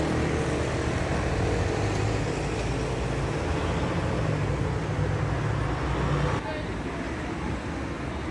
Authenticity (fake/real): real